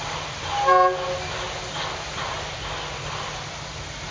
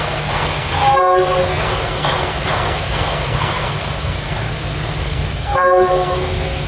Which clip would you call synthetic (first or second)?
second